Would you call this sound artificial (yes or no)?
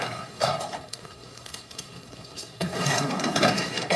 yes